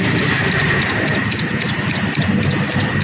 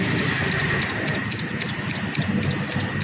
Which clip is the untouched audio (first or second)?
second